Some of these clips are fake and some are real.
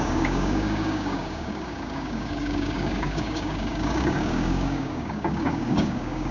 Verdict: fake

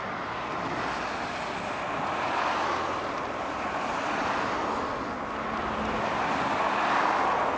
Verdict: real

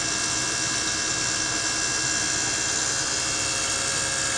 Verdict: real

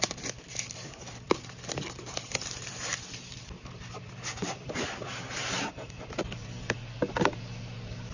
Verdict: real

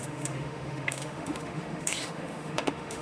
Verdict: fake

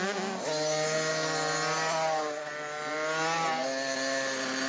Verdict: real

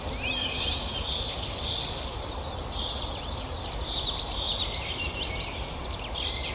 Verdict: real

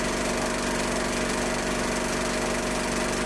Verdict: real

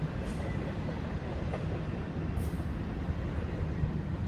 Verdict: real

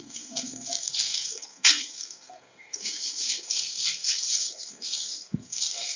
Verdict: fake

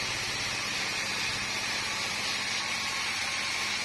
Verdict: real